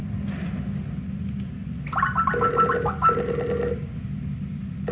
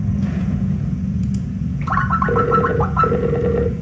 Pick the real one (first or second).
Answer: first